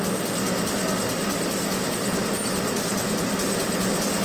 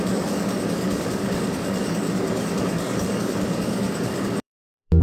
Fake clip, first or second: second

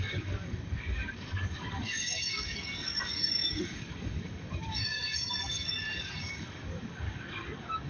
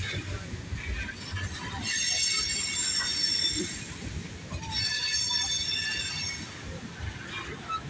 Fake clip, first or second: first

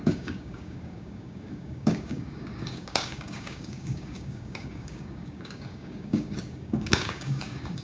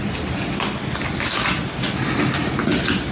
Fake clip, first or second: first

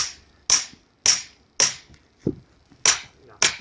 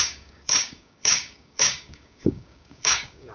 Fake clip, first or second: second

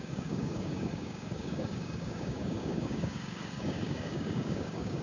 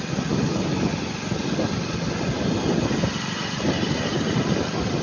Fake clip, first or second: first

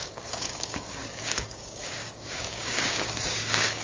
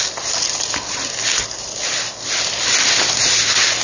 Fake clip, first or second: first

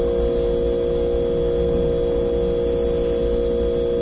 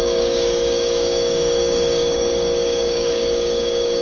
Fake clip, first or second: second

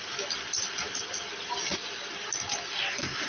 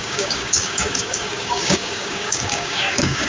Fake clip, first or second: second